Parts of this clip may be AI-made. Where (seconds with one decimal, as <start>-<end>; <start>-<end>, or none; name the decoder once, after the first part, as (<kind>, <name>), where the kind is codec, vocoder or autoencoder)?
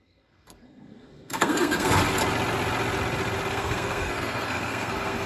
0.0-2.0 (codec, SNAC); 3.5-5.3